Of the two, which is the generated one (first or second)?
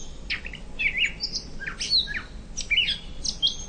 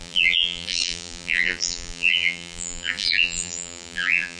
second